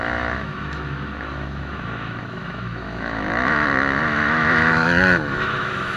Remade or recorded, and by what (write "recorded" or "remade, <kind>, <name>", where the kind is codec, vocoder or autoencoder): remade, autoencoder, DAC-VAE